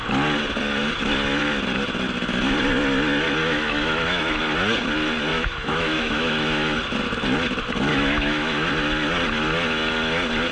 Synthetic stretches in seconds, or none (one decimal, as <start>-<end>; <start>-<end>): 3.4-4.4; 5.3-6.8; 7.9-8.7